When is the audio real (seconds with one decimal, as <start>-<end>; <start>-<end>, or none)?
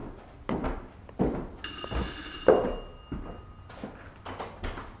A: 0.0-5.0